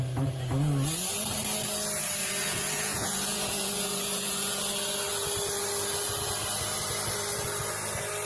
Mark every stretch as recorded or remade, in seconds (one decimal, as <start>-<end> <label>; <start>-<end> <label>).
0.0-2.2 recorded; 2.2-4.6 remade; 4.6-8.3 recorded